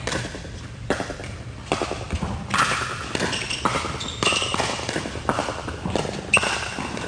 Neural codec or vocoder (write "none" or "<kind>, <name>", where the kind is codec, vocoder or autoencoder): none